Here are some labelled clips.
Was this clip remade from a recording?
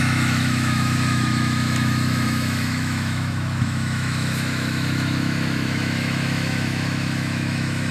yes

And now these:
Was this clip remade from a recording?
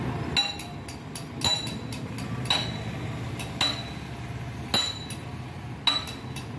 no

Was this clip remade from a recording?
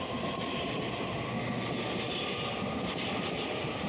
no